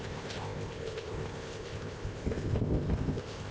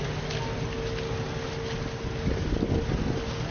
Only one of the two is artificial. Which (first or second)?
first